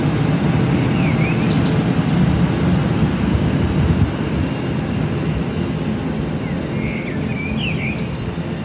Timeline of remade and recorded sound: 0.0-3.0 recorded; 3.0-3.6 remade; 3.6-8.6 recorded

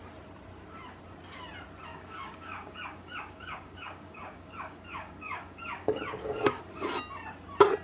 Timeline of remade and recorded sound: 0.0-1.9 recorded; 1.9-6.6 remade; 6.6-7.8 recorded